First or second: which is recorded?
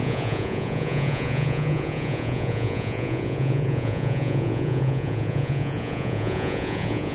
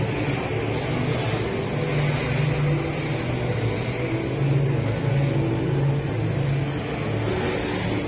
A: second